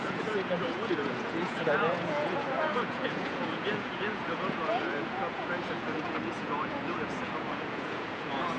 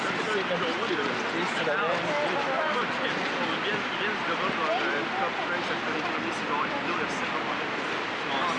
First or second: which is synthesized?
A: first